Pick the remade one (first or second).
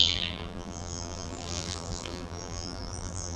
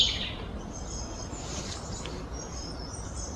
first